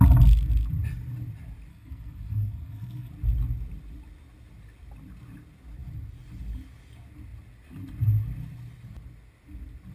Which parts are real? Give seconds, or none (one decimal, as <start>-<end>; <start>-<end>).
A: 0.0-1.7; 3.1-9.9

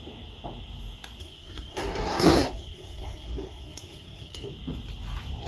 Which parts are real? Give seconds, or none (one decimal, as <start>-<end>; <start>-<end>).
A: 0.0-1.2; 4.5-5.5